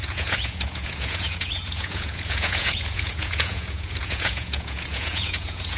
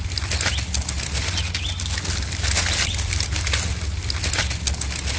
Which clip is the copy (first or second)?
first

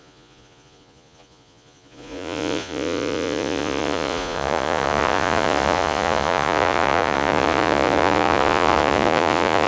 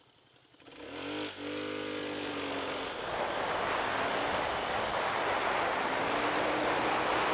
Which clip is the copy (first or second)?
first